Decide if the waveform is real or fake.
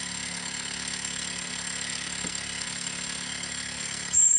fake